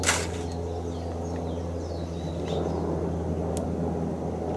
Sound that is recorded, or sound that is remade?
recorded